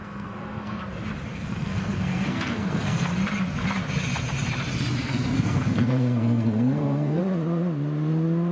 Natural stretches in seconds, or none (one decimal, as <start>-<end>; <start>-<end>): 0.8-1.3; 3.1-5.0; 7.2-8.5